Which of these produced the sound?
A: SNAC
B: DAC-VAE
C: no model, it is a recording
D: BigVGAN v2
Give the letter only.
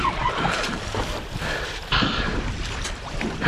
D